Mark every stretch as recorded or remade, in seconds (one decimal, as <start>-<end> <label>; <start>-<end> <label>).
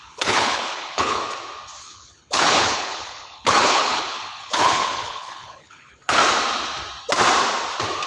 0.0-1.2 remade; 1.2-1.8 recorded; 1.8-6.2 remade; 6.2-8.1 recorded